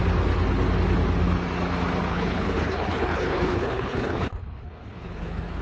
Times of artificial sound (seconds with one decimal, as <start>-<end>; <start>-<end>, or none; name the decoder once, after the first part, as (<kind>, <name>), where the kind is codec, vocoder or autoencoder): 2.1-5.6 (codec, HILCodec)